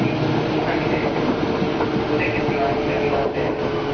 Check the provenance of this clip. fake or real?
real